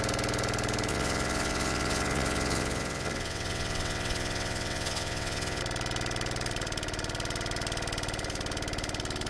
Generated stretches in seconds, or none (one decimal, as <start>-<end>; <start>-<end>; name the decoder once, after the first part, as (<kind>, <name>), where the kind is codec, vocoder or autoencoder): 0.9-5.6 (vocoder, WaveNeXt)